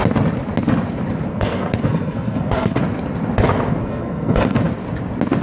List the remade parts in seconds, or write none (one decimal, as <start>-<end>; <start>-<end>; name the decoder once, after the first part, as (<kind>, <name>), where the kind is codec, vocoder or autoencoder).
1.3-2.8 (codec, SNAC); 3.8-4.6